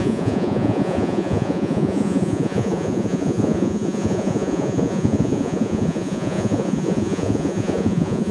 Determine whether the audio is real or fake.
fake